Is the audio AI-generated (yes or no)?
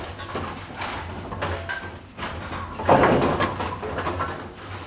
no